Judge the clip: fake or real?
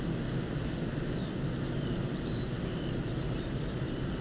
real